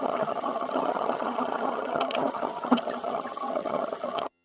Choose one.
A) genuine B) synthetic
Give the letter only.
B